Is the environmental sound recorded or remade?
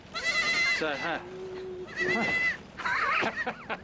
recorded